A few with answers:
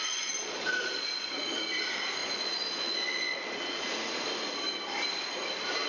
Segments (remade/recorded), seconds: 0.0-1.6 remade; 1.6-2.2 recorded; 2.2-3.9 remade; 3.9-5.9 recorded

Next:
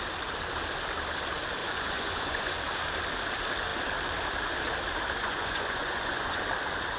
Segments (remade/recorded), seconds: 0.0-1.6 recorded; 1.6-2.5 remade; 2.5-5.2 recorded; 5.2-6.4 remade; 6.4-7.0 recorded

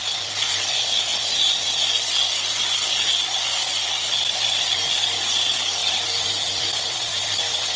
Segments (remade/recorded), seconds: 0.0-7.8 recorded

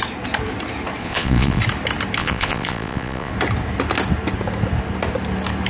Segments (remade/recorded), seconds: 0.0-1.0 recorded; 1.0-1.6 remade; 1.6-2.2 recorded; 2.2-3.3 remade; 3.3-5.7 recorded

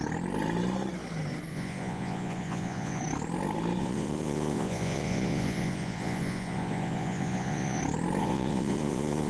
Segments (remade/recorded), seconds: 0.0-1.5 recorded; 1.5-3.0 remade; 3.0-3.8 recorded; 3.8-7.8 remade; 7.8-8.2 recorded; 8.2-9.3 remade